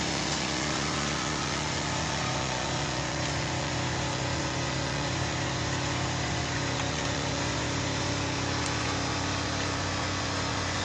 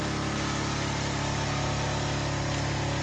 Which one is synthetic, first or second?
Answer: first